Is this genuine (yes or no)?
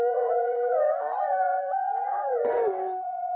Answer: no